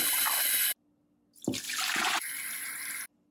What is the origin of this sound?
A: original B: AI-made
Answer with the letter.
A